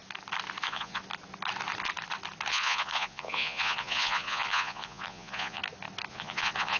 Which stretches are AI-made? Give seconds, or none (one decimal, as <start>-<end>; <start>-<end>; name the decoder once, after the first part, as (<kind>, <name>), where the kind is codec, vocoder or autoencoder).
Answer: 0.6-1.0 (vocoder, Vocos); 2.5-5.6; 6.1-6.8

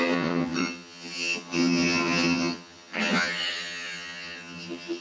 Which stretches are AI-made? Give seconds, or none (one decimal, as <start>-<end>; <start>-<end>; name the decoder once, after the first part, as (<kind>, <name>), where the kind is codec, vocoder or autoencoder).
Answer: 0.0-5.0 (vocoder, HiFi-GAN)

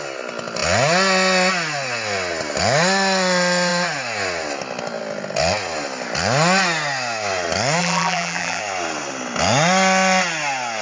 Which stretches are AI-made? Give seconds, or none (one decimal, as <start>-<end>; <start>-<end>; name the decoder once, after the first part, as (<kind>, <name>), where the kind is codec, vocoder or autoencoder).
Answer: 7.8-8.6 (vocoder, BigVGAN v2)

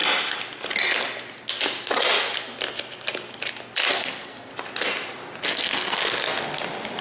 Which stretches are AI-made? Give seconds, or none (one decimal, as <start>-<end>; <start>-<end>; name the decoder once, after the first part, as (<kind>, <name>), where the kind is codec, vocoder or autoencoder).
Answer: 3.9-4.5 (codec, SNAC); 5.5-6.0

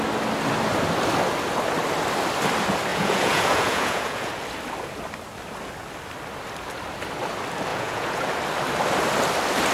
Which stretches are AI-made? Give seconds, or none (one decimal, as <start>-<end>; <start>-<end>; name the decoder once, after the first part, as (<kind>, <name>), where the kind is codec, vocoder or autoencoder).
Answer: 2.9-4.3 (vocoder, Vocos); 7.7-8.3